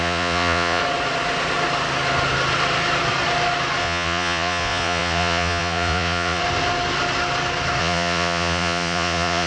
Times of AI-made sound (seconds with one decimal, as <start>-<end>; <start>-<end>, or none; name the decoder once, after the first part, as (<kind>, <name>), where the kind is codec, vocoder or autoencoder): 0.0-0.8 (vocoder, Vocos); 3.8-6.4; 7.8-9.5